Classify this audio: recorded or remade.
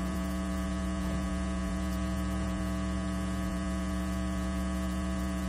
remade